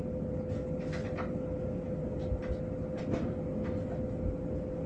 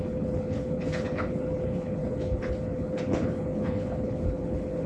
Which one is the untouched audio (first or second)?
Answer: first